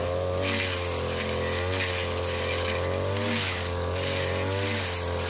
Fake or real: real